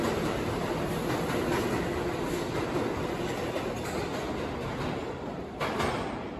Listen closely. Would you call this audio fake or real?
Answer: real